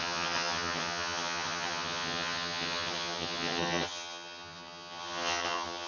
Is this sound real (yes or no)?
no